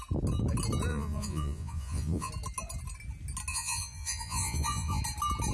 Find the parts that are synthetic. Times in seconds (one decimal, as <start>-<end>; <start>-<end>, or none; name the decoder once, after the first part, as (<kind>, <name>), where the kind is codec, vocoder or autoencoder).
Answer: 0.9-2.3 (vocoder, Vocos); 3.5-5.0

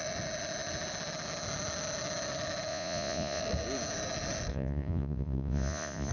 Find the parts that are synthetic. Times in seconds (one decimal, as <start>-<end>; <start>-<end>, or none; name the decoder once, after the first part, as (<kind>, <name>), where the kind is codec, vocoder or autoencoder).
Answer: 2.7-3.4 (vocoder, Vocos); 4.5-6.1

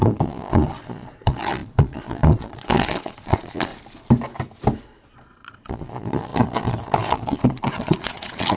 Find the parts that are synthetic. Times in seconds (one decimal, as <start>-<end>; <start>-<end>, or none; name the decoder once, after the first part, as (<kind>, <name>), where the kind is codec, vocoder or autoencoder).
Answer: 0.0-3.7 (vocoder, Vocos); 5.1-8.6

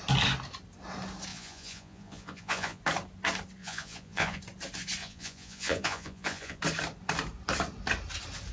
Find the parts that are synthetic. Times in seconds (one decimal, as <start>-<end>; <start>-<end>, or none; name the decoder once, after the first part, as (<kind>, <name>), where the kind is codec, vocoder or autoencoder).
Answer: 1.3-2.8 (vocoder, Vocos); 3.6-4.4; 5.0-6.6

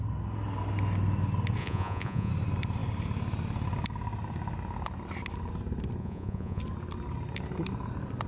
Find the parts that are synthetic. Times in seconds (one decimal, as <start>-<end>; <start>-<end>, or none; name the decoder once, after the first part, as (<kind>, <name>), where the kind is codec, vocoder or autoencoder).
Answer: 1.6-2.3 (vocoder, Vocos); 6.0-6.6